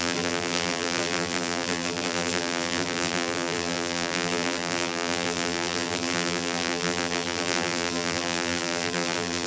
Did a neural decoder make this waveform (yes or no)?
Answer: yes